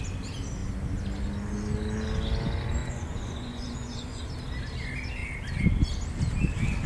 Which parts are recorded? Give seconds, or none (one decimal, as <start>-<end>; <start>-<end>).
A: 0.0-2.8; 4.2-6.9